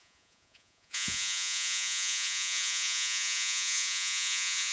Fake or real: fake